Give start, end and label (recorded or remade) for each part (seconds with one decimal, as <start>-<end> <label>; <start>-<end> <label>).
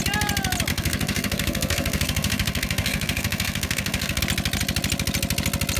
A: 0.0-0.7 recorded; 0.7-4.2 remade; 4.2-5.8 recorded